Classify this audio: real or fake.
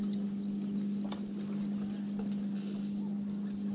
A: real